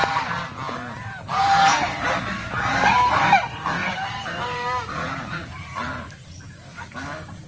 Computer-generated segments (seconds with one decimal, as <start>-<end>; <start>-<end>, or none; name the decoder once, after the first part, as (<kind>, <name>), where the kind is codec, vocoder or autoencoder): 1.7-3.3 (vocoder, BigVGAN v2); 3.8-5.9